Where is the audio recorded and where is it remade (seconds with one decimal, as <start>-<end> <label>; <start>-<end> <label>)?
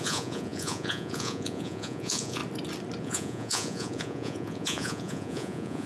0.0-2.4 remade; 2.4-3.0 recorded; 3.0-5.9 remade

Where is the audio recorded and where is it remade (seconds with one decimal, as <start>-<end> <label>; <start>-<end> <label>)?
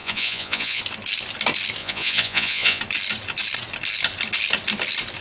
0.0-0.8 remade; 0.8-1.8 recorded; 1.8-2.8 remade; 2.8-5.2 recorded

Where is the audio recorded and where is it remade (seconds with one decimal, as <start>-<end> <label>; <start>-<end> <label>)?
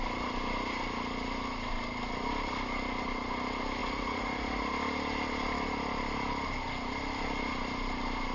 0.0-3.8 recorded; 3.8-4.7 remade; 4.7-8.3 recorded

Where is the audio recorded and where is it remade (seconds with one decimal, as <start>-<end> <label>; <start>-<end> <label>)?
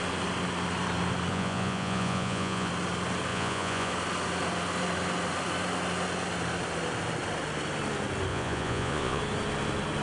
0.0-1.3 recorded; 1.3-2.7 remade; 2.7-3.3 recorded; 3.3-3.9 remade; 3.9-8.3 recorded; 8.3-9.2 remade; 9.2-10.0 recorded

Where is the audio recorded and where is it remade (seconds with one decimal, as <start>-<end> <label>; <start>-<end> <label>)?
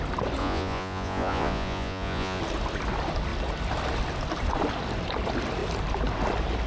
0.0-0.4 recorded; 0.4-2.4 remade; 2.4-6.7 recorded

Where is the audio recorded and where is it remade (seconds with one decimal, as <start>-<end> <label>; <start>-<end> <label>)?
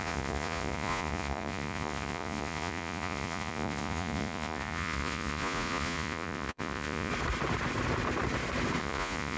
0.0-7.1 remade; 7.1-8.8 recorded; 8.8-9.4 remade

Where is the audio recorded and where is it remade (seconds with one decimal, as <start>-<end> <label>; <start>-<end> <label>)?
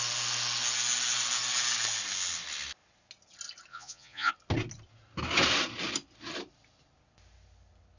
0.0-3.7 recorded; 3.7-4.3 remade; 4.3-8.0 recorded